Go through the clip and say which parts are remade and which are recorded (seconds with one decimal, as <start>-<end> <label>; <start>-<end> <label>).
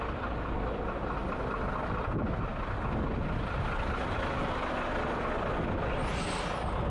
0.0-6.9 recorded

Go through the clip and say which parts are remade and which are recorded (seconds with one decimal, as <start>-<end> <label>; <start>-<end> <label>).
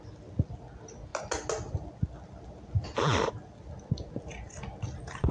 0.0-5.3 recorded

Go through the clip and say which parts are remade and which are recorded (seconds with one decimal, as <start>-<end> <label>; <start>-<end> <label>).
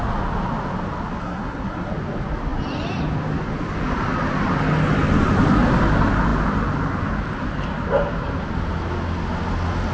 0.0-1.2 recorded; 1.2-1.9 remade; 1.9-9.9 recorded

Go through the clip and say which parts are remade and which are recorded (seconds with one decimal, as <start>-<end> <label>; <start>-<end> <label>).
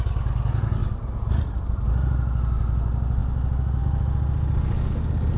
0.0-5.4 recorded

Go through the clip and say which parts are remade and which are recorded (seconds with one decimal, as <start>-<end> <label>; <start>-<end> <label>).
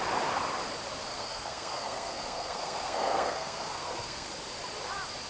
0.0-1.1 recorded; 1.1-4.3 remade; 4.3-5.3 recorded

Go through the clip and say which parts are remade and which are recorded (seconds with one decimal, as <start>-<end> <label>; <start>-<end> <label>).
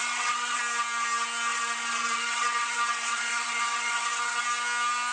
0.0-0.6 remade; 0.6-1.5 recorded; 1.5-4.4 remade; 4.4-5.1 recorded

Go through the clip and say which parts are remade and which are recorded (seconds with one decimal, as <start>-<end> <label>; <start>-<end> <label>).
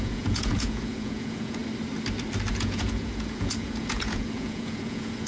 0.0-1.6 remade; 1.6-2.5 recorded; 2.5-5.3 remade